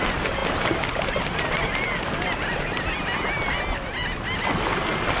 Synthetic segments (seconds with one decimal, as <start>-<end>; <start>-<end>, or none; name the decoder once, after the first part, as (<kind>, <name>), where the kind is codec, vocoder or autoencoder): none